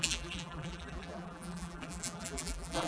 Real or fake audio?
fake